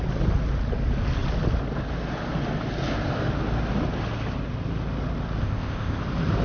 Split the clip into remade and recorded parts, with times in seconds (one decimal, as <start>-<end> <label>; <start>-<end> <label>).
0.0-5.4 recorded; 5.4-6.0 remade; 6.0-6.4 recorded